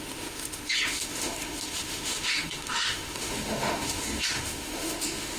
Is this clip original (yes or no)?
no